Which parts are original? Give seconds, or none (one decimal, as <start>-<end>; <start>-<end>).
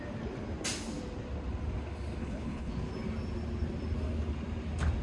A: 0.0-2.2; 2.7-5.0